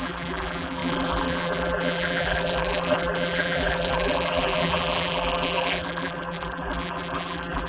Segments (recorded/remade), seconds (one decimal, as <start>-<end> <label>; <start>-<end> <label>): 0.0-7.7 remade